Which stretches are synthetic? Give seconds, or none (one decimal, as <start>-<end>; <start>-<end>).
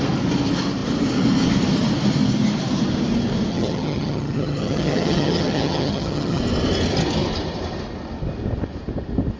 3.5-6.4